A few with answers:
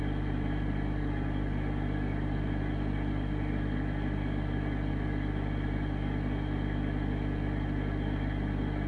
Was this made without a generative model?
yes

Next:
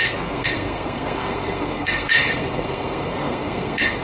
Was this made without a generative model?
no